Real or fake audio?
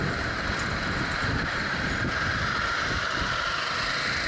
real